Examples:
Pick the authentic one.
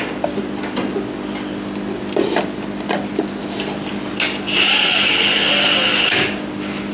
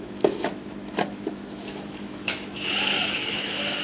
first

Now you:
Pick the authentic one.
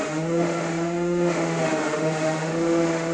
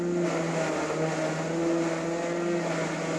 second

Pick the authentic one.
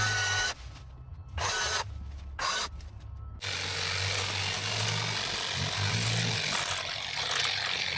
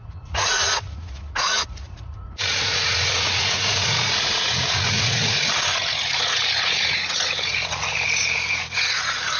first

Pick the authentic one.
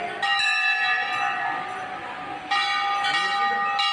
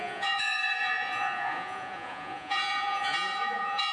first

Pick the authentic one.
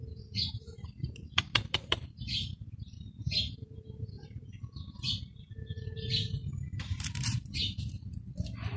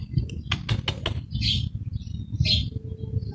second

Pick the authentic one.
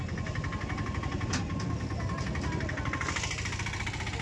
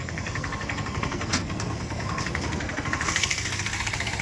first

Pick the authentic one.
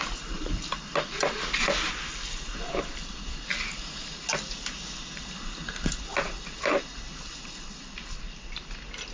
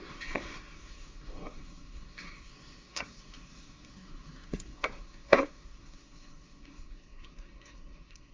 first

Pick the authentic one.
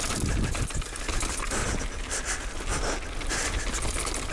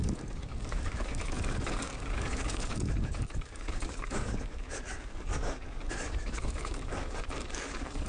first